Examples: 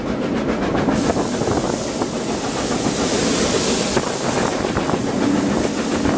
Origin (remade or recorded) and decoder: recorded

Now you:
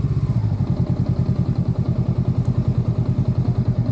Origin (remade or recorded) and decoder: recorded